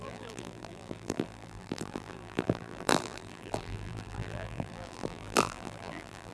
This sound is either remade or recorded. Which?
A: remade